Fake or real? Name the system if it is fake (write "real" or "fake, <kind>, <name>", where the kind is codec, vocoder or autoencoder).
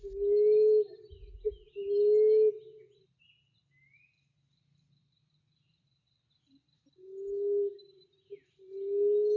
real